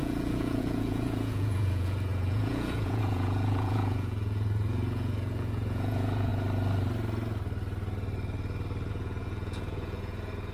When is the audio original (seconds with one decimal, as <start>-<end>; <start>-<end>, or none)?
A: 6.3-8.9